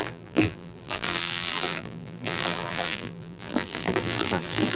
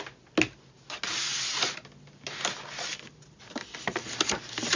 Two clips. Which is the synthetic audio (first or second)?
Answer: first